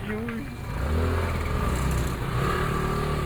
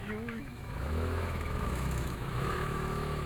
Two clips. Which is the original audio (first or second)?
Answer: first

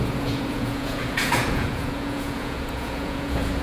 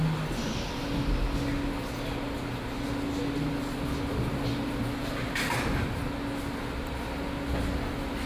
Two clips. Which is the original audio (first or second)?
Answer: second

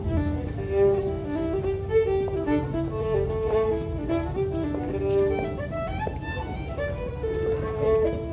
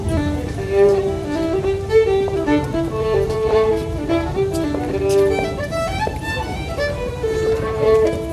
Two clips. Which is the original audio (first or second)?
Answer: first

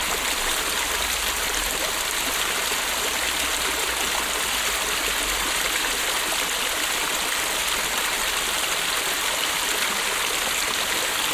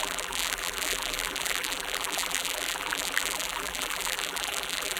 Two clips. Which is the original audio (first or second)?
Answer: first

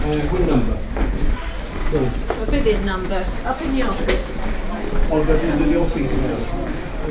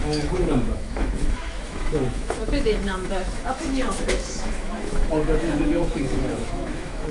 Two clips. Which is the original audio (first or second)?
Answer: first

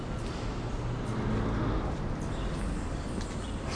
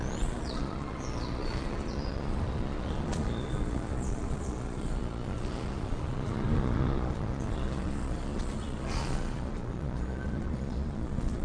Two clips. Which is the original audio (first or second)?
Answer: first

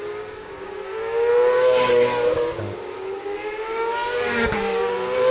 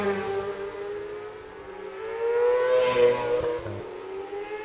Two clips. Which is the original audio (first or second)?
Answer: second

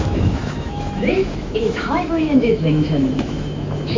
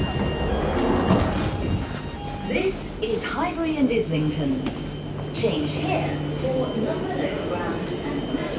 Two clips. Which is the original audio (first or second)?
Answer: second